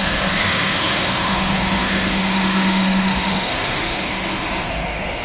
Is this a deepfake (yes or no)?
yes